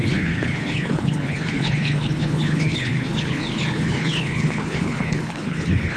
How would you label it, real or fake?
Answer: fake